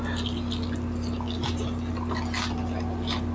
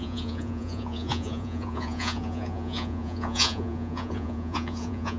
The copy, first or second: second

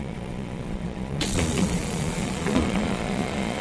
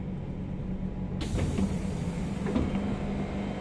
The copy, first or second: first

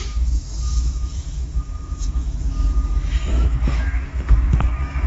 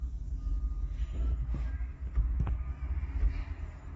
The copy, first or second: first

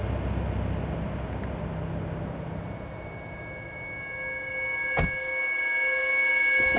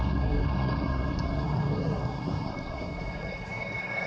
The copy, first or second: second